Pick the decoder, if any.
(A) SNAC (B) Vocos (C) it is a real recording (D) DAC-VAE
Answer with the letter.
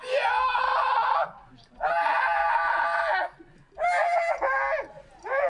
C